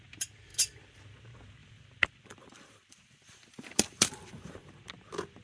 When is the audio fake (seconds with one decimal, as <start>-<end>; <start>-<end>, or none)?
0.5-1.0; 1.6-4.8